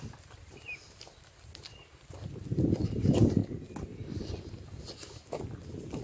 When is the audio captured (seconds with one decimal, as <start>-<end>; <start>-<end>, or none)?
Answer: 0.0-6.0